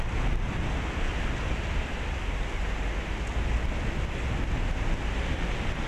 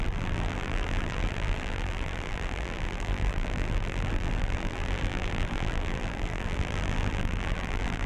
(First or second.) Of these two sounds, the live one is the first